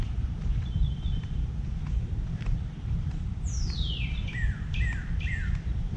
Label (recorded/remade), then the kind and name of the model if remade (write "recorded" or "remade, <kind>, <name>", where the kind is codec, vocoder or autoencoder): recorded